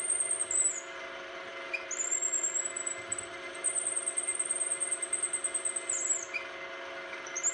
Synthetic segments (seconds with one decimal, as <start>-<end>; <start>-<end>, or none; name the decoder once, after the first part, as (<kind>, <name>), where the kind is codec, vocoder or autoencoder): none